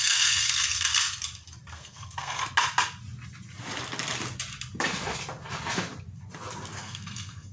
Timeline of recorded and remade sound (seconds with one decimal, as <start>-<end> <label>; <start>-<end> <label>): 0.0-0.9 remade; 0.9-1.7 recorded; 1.7-2.4 remade; 2.4-6.8 recorded; 6.8-7.5 remade